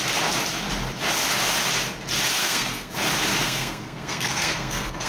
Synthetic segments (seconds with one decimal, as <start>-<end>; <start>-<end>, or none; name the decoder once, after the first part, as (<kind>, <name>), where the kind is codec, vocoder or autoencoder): 2.4-2.9 (codec, SNAC); 3.4-5.1